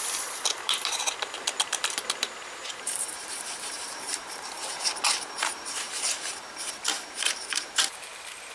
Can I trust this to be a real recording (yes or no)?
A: no